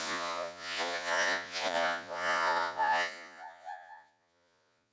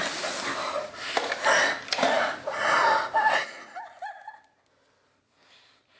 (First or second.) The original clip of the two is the second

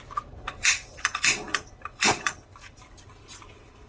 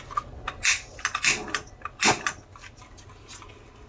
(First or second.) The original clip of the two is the second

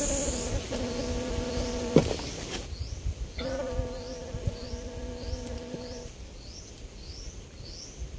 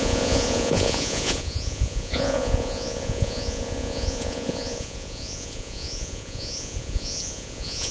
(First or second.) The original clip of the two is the first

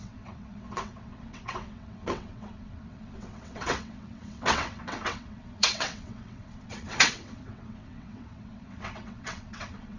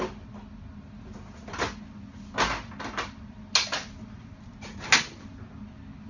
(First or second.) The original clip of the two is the second